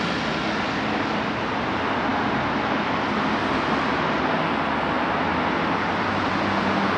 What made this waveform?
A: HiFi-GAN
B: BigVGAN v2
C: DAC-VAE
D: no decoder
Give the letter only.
D